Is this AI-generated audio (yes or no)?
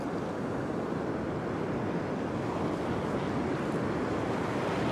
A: no